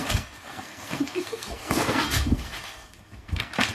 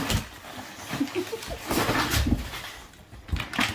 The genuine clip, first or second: second